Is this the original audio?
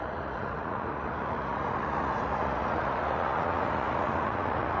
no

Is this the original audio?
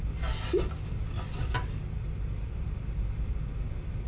yes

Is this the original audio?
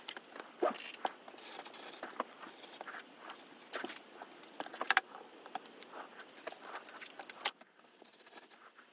yes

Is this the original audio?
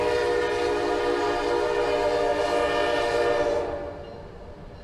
yes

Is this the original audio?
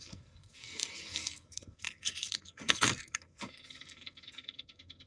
no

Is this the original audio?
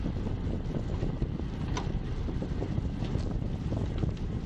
yes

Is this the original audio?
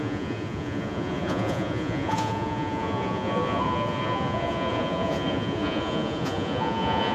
no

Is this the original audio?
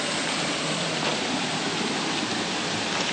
yes